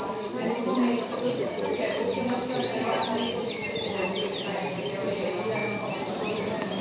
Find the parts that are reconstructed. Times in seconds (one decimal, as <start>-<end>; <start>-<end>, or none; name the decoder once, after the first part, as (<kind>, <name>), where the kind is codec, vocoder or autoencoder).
0.0-5.6 (vocoder, BigVGAN v2); 6.1-6.8